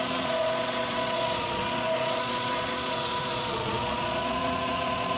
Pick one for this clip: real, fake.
fake